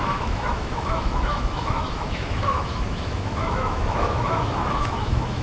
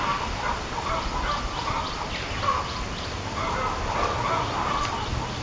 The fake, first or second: first